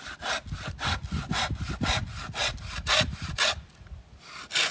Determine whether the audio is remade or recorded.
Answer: recorded